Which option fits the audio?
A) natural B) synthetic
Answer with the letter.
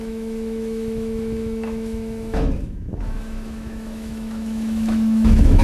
B